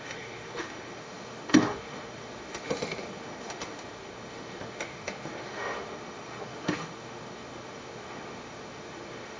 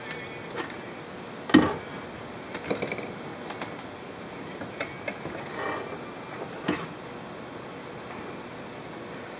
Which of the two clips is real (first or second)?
second